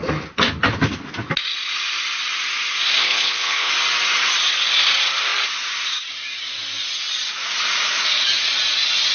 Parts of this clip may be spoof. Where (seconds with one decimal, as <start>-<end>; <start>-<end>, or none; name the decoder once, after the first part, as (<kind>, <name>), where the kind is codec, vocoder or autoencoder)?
3.0-3.7 (codec, HILCodec)